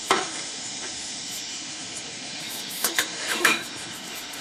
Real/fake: fake